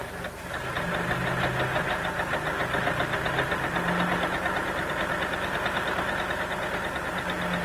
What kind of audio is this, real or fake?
real